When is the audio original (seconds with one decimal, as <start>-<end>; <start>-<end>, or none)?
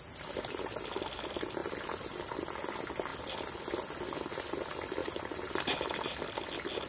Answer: 0.0-1.6; 2.4-5.0; 6.5-6.9